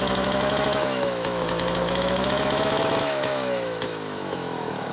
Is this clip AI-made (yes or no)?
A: yes